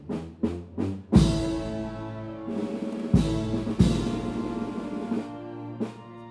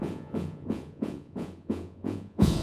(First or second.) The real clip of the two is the first